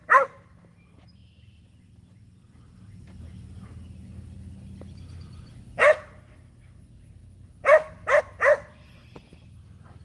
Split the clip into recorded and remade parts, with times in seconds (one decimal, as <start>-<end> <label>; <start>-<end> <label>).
0.0-10.0 recorded